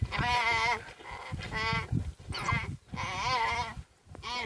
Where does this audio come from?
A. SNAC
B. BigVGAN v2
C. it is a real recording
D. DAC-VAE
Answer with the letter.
B